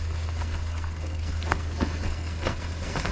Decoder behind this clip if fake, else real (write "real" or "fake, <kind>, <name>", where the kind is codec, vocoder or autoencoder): fake, codec, SNAC